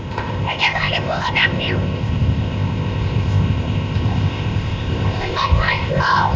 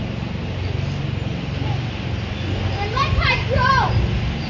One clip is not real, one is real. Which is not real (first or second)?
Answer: first